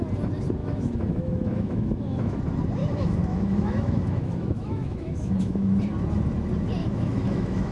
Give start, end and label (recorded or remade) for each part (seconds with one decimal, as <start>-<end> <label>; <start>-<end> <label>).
0.0-0.6 recorded; 0.6-2.4 remade; 2.4-2.8 recorded; 2.8-5.8 remade; 5.8-6.8 recorded; 6.8-7.7 remade